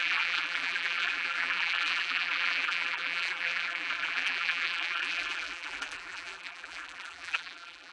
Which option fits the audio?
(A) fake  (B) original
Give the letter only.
A